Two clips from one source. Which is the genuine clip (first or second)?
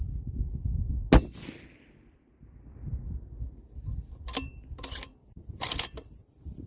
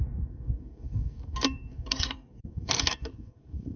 first